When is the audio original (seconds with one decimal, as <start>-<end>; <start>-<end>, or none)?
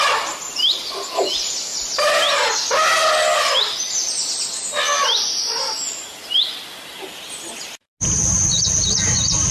0.0-9.5